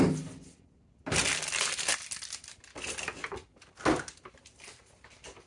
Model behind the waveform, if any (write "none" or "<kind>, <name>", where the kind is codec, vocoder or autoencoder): none